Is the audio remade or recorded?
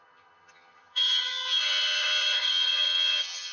remade